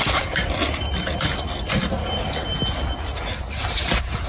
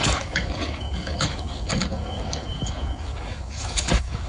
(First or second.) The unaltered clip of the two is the first